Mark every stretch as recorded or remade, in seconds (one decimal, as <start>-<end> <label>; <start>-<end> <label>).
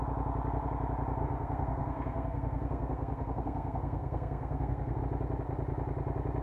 0.0-1.2 recorded; 1.2-5.0 remade; 5.0-6.4 recorded